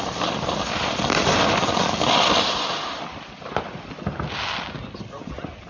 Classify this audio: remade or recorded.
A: recorded